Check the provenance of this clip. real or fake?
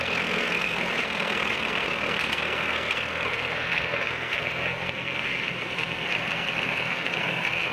fake